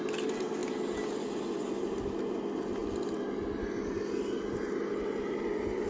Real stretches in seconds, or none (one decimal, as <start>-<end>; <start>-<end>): 0.0-5.9